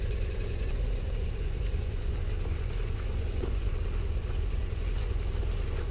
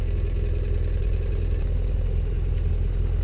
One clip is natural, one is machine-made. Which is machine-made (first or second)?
first